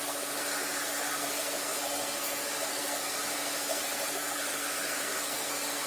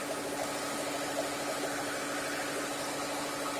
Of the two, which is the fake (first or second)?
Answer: first